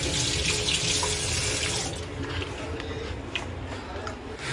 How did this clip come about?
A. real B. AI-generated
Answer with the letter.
A